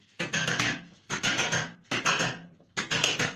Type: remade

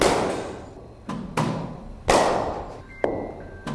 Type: recorded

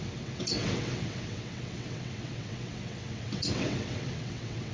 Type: remade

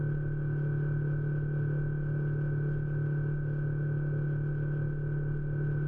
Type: recorded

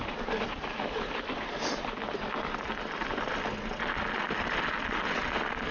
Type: recorded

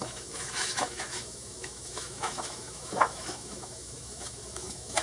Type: remade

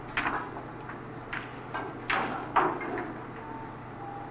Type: recorded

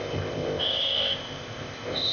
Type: remade